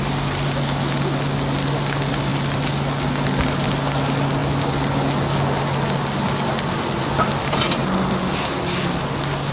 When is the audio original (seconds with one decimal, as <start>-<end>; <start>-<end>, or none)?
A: 0.0-9.5